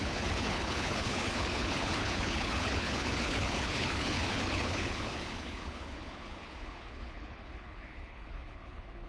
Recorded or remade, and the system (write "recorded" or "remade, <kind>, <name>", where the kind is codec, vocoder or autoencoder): remade, codec, HILCodec